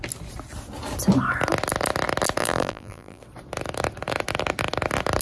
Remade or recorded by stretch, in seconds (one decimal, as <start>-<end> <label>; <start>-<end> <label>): 0.0-2.4 recorded; 2.4-3.2 remade; 3.2-5.2 recorded